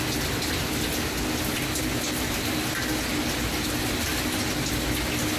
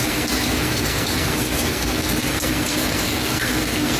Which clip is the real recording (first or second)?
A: first